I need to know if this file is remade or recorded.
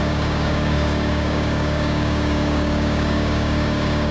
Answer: remade